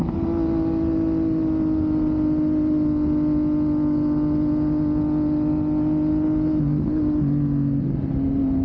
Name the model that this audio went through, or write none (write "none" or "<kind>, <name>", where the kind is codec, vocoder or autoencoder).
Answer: none